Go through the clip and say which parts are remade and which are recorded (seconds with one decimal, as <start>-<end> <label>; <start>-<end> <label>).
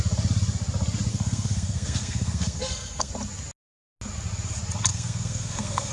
0.0-1.1 recorded; 1.1-3.1 remade; 3.1-4.9 recorded; 4.9-5.9 remade